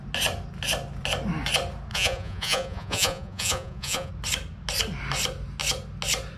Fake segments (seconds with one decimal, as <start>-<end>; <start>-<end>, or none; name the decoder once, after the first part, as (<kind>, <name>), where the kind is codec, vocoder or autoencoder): 1.9-4.1 (vocoder, Vocos)